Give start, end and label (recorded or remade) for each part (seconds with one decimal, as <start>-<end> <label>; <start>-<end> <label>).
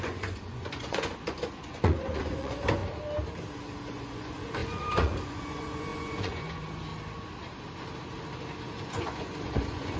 0.0-2.8 remade; 2.8-3.9 recorded; 3.9-6.9 remade; 6.9-8.7 recorded; 8.7-10.0 remade